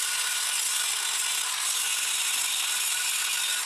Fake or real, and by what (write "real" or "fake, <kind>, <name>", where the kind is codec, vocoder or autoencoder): real